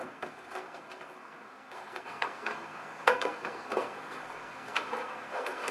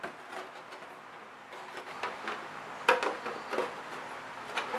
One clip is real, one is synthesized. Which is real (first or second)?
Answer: second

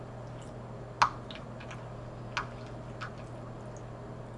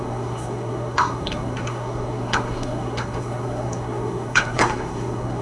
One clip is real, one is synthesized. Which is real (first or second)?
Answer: first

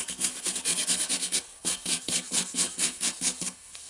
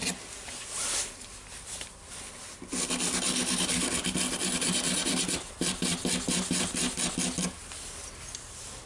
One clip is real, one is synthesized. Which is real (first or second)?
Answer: second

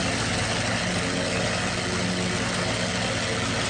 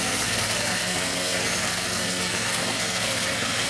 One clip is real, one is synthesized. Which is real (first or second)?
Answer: first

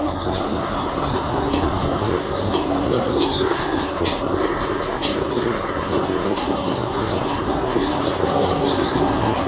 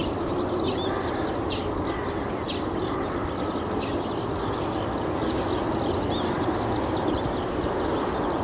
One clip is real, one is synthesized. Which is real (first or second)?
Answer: second